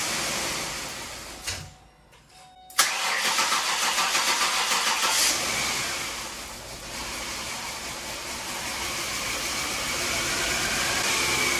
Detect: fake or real real